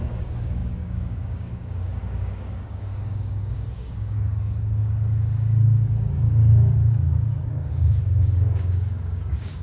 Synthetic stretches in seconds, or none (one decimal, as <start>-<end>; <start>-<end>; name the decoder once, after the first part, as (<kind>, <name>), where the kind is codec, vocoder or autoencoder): 0.0-9.6 (codec, DAC)